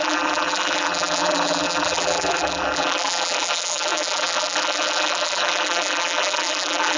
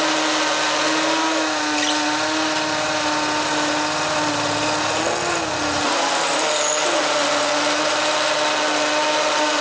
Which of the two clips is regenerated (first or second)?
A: first